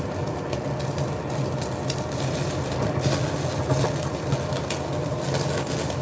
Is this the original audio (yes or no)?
yes